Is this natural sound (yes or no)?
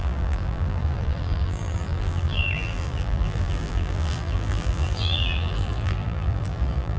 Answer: no